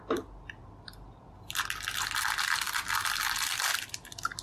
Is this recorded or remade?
recorded